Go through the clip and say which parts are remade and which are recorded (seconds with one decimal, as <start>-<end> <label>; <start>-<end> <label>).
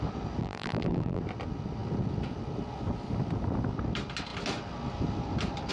0.0-0.4 recorded; 0.4-1.2 remade; 1.2-5.7 recorded